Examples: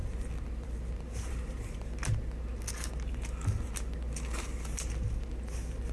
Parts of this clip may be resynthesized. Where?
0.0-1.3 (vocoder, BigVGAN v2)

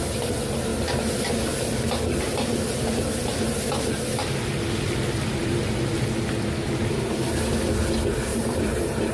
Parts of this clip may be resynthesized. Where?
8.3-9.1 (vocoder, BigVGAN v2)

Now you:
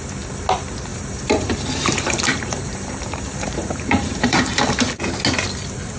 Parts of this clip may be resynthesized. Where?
0.9-4.4 (vocoder, BigVGAN v2)

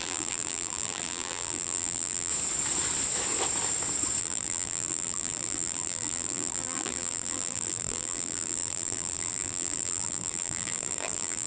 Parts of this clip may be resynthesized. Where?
0.0-2.3 (vocoder, BigVGAN v2); 4.2-11.5